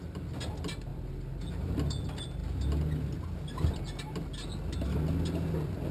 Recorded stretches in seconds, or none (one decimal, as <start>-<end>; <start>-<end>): 0.0-5.9